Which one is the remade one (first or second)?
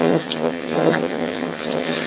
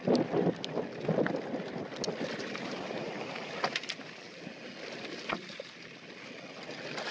first